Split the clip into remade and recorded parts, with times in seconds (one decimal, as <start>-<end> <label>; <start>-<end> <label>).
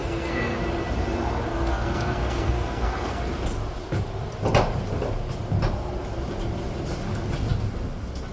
0.0-0.6 remade; 0.6-1.5 recorded; 1.5-3.2 remade; 3.2-8.3 recorded